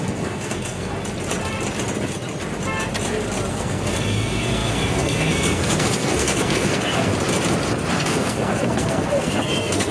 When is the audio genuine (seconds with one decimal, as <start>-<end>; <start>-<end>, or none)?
0.9-3.5; 7.1-7.9